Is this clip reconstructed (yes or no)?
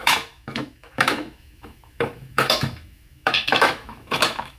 yes